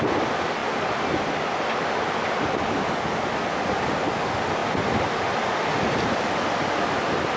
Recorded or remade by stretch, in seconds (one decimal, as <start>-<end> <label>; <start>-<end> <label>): 0.0-7.4 recorded